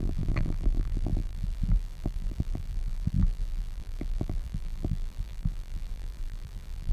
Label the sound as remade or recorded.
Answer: remade